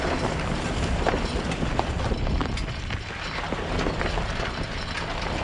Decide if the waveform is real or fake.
real